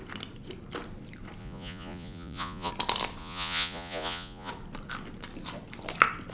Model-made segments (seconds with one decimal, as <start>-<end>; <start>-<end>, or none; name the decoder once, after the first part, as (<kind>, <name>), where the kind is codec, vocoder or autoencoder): 1.4-2.7 (vocoder, Vocos); 3.2-4.5